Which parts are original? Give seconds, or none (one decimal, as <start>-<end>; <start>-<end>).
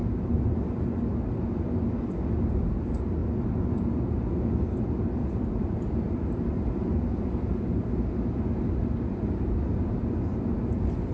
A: 0.0-5.2; 7.9-11.1